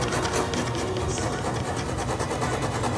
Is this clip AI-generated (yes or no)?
no